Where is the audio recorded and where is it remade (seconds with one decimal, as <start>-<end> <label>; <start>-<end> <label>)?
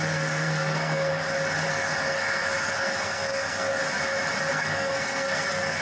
0.0-1.1 remade; 1.1-1.7 recorded; 1.7-3.8 remade; 3.8-4.5 recorded; 4.5-5.8 remade